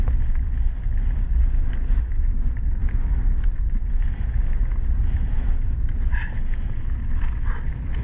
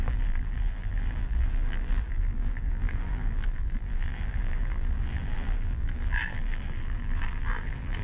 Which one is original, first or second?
first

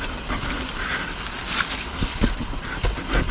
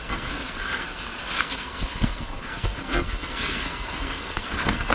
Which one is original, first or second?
first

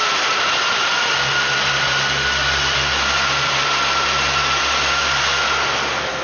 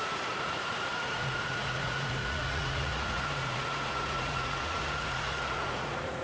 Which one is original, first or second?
first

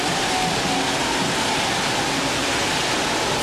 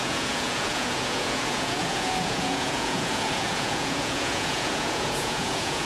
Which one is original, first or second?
first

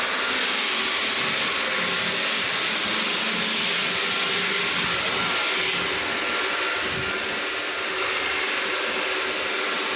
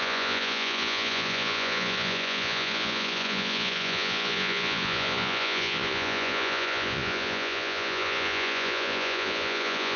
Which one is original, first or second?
first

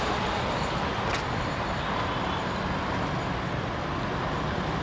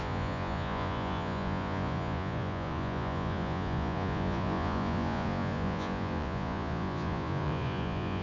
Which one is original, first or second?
first